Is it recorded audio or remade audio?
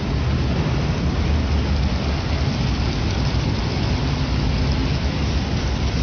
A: recorded